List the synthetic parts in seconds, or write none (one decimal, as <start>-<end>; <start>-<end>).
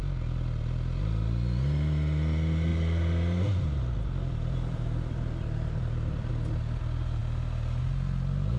2.7-6.3